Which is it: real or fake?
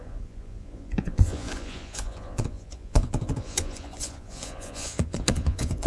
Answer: fake